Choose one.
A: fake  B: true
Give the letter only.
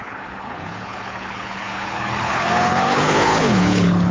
A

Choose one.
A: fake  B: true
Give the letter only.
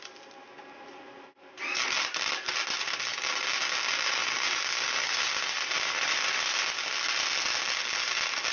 B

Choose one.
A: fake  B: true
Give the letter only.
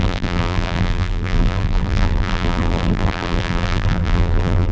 A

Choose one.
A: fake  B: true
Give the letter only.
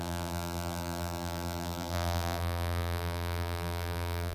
A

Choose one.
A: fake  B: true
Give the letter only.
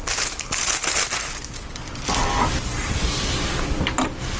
B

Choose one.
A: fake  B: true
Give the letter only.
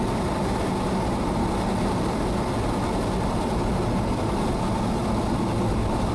B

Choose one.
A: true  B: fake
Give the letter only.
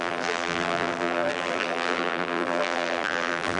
B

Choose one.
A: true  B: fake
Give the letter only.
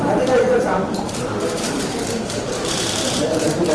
B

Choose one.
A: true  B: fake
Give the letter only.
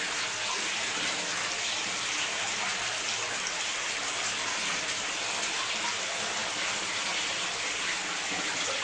A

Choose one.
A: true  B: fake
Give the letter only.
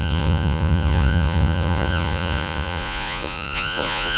B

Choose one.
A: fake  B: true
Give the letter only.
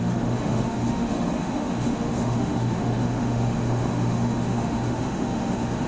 A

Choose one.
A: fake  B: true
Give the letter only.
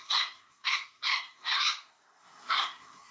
A